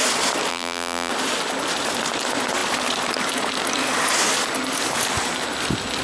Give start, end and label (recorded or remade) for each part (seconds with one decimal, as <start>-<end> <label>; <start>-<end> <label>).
0.0-0.5 recorded; 0.5-1.1 remade; 1.1-6.0 recorded